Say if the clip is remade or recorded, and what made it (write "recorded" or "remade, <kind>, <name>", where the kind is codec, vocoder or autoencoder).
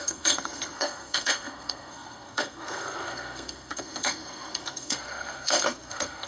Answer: remade, codec, SNAC